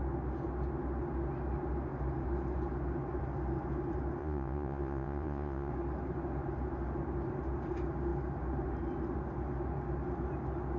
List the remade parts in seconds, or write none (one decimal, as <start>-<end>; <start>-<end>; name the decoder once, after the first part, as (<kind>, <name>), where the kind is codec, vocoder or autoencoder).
4.2-5.7 (vocoder, Vocos)